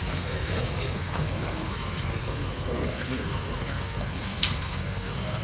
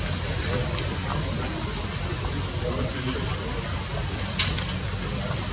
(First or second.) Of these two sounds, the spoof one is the first